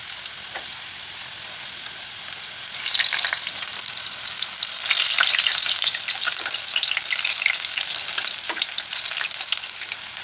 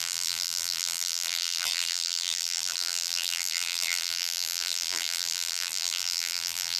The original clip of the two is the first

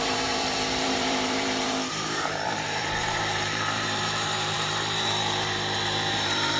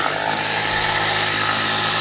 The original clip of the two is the second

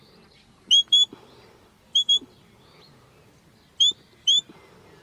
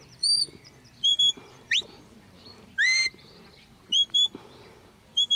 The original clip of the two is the first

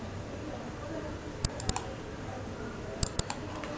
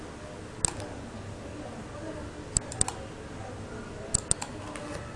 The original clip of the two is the second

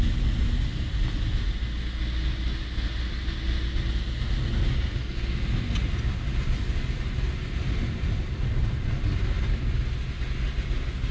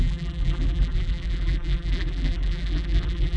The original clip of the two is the first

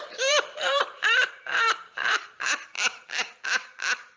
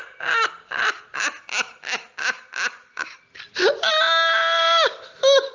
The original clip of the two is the second